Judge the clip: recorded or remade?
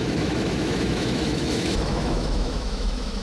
remade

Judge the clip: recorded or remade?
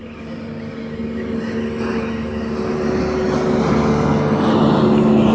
recorded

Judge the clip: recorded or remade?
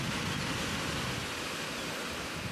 recorded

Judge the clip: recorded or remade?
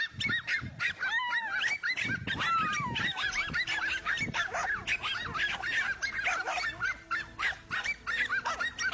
recorded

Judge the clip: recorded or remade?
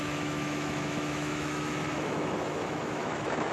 remade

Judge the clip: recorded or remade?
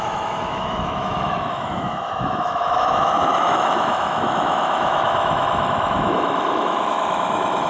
remade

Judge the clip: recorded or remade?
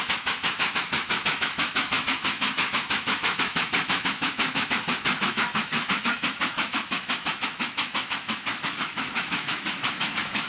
remade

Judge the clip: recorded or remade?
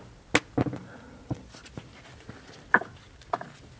recorded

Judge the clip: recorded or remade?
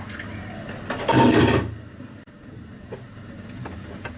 recorded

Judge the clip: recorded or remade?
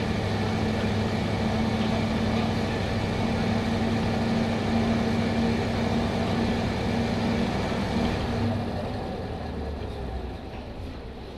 recorded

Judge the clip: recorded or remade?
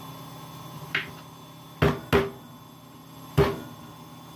recorded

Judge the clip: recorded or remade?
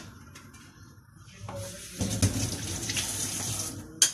recorded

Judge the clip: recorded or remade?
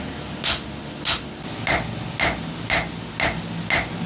recorded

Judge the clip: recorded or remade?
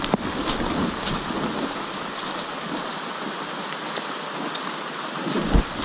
recorded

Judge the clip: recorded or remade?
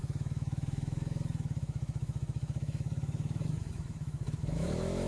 remade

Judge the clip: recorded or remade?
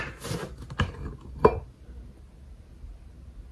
recorded